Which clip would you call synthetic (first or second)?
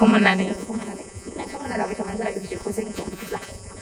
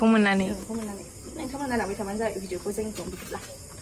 first